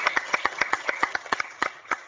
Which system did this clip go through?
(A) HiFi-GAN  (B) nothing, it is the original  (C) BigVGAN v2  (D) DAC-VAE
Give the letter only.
A